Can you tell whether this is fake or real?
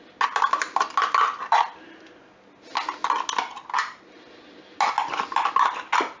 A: real